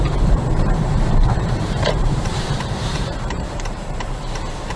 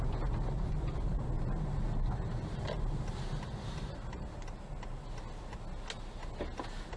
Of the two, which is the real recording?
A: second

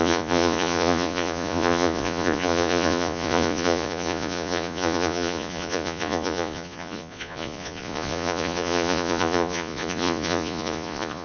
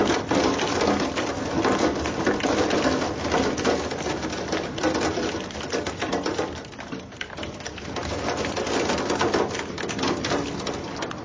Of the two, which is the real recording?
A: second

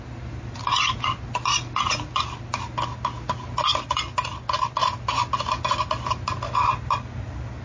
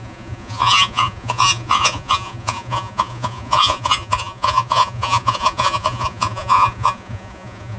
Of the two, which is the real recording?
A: first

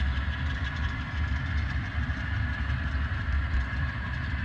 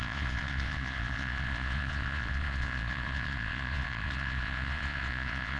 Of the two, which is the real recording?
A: first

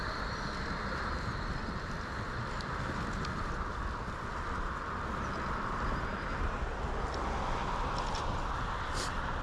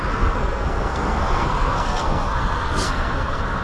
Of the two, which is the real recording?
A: first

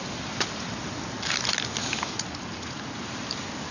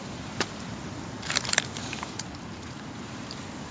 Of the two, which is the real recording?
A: first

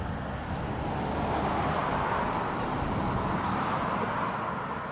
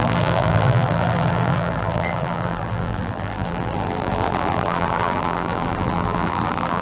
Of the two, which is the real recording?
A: first